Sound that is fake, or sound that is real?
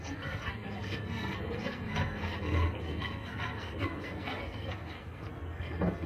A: fake